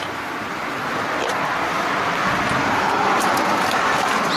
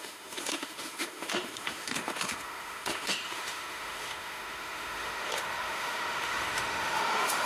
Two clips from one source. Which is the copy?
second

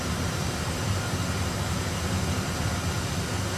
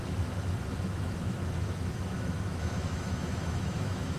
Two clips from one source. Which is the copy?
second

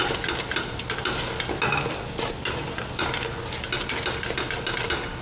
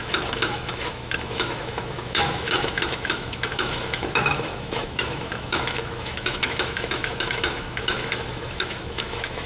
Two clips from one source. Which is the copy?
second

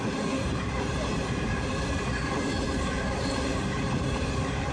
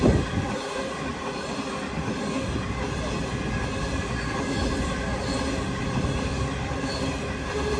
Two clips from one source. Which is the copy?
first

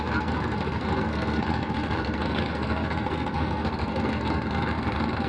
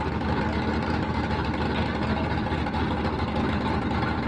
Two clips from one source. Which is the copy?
first